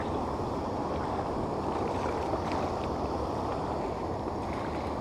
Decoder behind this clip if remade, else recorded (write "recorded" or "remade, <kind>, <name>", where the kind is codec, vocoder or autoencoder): recorded